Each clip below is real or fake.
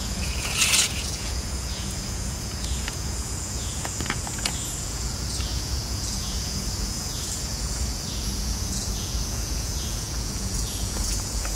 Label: fake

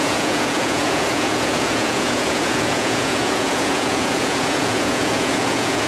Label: fake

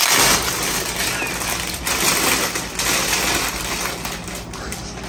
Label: real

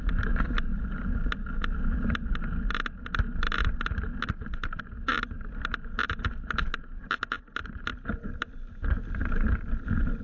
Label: real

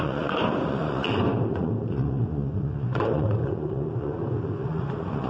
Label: fake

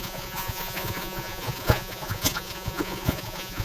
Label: fake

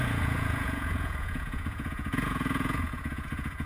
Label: fake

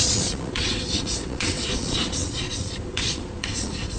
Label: fake